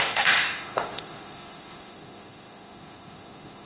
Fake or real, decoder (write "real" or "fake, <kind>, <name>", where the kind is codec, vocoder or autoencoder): fake, autoencoder, DAC-VAE